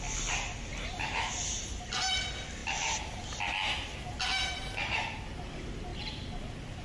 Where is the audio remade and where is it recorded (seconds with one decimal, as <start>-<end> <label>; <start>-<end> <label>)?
0.0-6.8 recorded